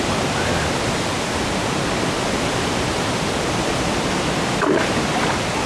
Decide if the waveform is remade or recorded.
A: recorded